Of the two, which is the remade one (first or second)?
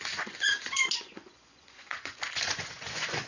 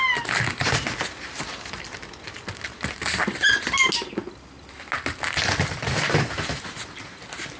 first